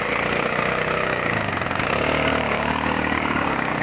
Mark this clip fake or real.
fake